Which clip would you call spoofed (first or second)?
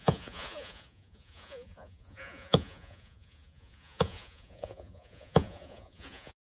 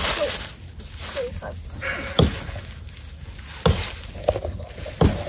first